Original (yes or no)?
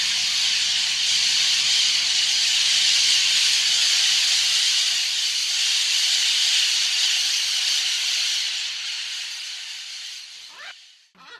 yes